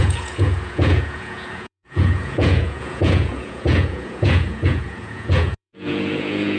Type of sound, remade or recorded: remade